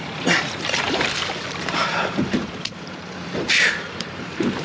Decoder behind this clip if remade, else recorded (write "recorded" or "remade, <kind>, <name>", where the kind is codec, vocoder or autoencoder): remade, vocoder, BigVGAN v2